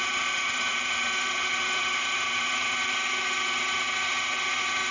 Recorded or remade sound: remade